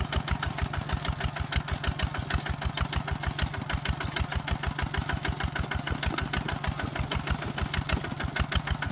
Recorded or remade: recorded